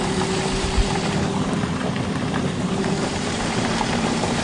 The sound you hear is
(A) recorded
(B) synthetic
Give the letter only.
B